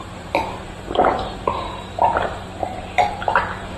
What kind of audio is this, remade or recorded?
remade